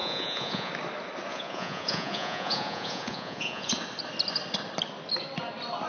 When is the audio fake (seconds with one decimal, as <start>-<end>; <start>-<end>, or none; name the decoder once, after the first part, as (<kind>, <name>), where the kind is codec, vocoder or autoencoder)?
0.0-0.7 (vocoder, Vocos); 1.3-3.7